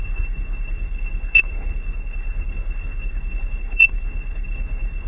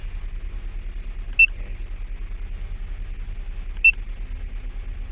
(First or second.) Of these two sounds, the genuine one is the second